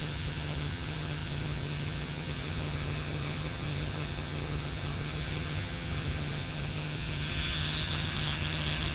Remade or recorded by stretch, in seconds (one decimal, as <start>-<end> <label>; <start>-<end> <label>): 0.0-8.9 remade

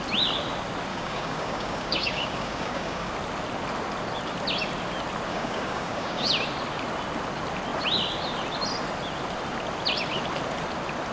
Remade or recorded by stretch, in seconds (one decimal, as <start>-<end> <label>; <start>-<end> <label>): 0.0-0.9 recorded; 0.9-3.1 remade; 3.1-5.3 recorded; 5.3-6.3 remade; 6.3-11.1 recorded